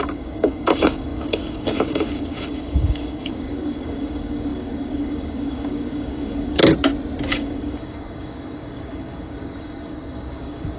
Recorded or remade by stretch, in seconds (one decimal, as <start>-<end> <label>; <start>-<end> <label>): 0.0-6.6 remade; 6.6-7.3 recorded; 7.3-10.8 remade